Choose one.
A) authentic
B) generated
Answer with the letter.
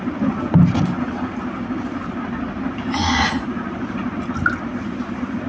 A